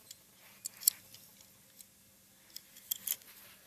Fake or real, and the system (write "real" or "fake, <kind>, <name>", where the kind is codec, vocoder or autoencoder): real